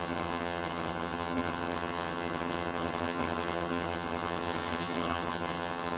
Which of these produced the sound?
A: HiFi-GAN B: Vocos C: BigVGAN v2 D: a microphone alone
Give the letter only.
A